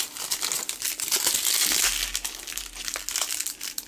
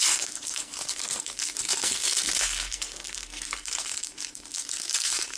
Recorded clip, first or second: first